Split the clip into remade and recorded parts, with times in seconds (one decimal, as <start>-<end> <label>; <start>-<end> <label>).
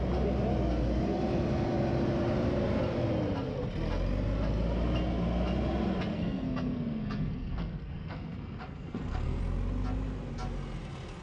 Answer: 0.0-6.1 recorded; 6.1-9.4 remade; 9.4-11.2 recorded